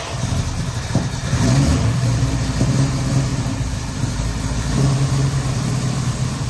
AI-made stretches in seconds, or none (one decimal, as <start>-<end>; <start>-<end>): 1.7-2.3; 3.3-6.5